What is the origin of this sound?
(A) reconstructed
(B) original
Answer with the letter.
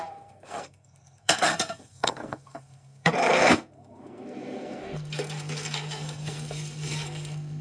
A